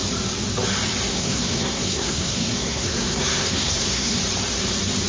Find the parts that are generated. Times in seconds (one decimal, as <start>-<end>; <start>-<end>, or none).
1.1-4.2